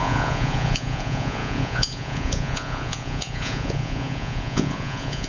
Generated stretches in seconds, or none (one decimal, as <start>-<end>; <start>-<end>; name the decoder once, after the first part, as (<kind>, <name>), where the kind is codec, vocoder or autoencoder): 0.0-5.3 (vocoder, Vocos)